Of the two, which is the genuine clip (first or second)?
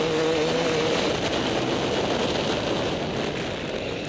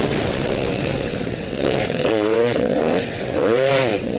first